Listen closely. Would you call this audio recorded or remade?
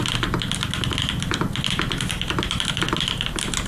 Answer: recorded